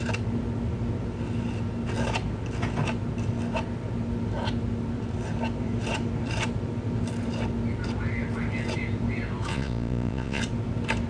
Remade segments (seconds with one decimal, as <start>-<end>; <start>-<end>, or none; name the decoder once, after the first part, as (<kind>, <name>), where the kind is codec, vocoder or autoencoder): 9.5-10.4 (vocoder, Vocos)